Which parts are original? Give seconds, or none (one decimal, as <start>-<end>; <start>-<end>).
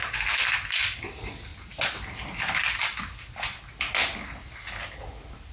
0.0-5.5